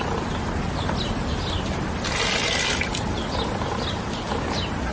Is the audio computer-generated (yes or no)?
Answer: no